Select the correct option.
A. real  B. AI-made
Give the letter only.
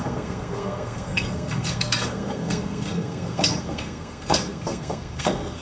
B